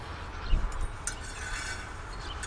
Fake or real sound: real